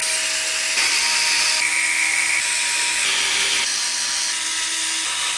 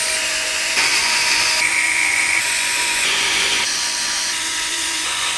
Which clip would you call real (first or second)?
first